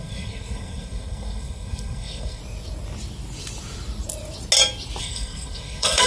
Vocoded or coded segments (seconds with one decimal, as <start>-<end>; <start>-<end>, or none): 0.0-2.4; 5.0-6.1